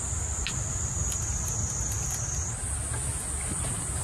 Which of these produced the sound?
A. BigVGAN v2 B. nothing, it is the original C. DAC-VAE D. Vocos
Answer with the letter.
B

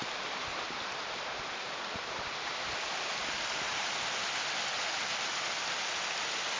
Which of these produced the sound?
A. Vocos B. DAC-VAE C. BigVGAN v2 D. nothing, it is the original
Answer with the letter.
D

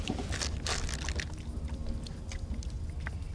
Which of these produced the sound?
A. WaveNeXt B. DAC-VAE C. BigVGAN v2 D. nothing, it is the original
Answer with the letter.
D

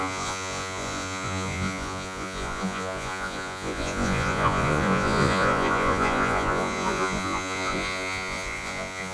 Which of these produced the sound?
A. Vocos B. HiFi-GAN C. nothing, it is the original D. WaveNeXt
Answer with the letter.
A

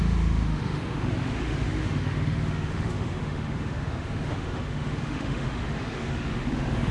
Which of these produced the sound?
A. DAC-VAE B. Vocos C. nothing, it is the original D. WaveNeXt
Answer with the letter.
A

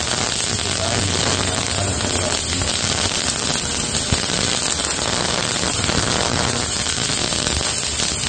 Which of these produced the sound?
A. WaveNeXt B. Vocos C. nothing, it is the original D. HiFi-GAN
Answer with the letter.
C